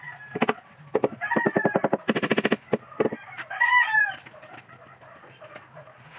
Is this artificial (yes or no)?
no